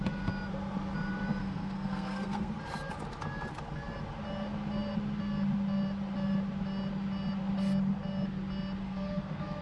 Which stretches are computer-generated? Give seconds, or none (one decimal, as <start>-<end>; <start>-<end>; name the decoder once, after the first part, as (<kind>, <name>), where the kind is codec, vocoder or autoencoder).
1.4-2.5 (codec, SNAC); 8.8-9.6